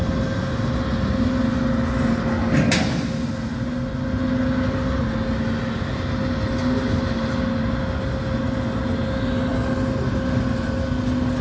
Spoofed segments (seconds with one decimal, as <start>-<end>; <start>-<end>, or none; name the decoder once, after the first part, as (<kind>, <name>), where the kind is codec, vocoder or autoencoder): none